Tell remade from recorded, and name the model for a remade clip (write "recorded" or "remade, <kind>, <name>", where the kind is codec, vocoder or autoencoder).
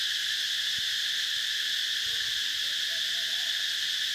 recorded